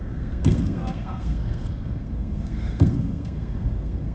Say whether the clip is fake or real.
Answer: fake